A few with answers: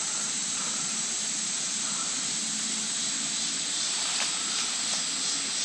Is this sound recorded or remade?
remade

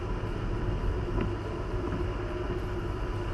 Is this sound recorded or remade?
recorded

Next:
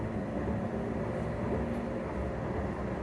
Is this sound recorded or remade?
recorded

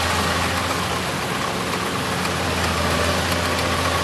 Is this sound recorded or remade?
recorded